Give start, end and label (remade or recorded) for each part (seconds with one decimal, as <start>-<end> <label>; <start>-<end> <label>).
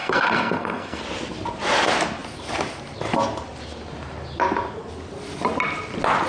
0.0-1.0 remade; 1.0-6.3 recorded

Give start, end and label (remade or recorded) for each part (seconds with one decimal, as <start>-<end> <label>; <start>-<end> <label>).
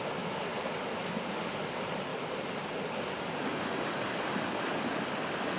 0.0-5.6 recorded